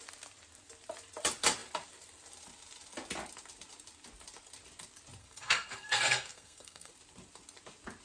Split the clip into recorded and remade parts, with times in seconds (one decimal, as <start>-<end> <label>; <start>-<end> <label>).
0.0-5.2 recorded; 5.2-6.9 remade; 6.9-8.0 recorded

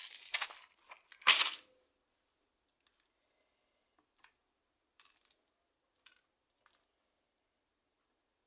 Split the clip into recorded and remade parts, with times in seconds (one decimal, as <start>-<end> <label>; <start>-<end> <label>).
0.0-8.5 recorded